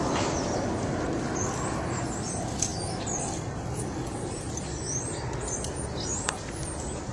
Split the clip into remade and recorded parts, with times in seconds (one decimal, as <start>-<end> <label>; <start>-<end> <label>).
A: 0.0-7.1 recorded